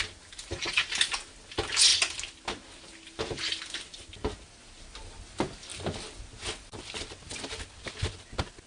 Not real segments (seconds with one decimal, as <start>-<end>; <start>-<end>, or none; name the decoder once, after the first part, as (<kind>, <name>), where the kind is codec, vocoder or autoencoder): none